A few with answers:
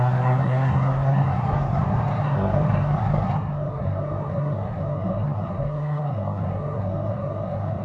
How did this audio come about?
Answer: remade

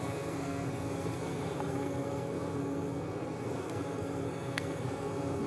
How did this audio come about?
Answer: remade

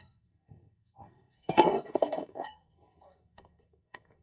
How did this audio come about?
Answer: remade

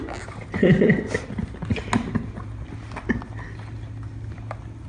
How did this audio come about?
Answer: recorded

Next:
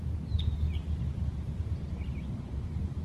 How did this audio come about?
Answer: recorded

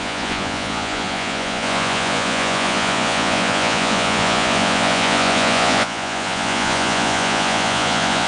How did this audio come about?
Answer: remade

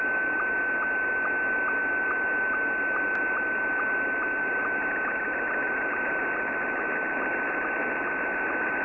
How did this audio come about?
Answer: recorded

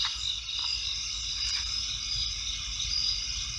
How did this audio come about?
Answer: recorded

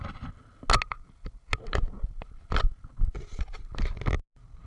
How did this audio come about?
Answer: recorded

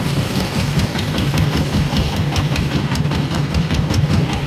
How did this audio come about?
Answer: remade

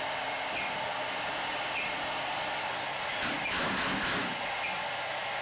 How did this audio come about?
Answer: remade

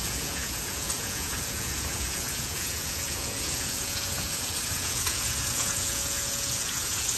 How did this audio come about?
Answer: remade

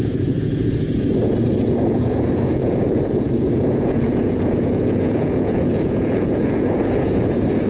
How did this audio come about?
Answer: remade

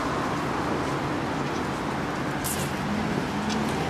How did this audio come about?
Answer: recorded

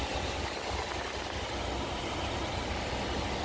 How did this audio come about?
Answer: recorded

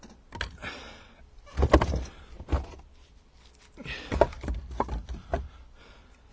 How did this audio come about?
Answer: recorded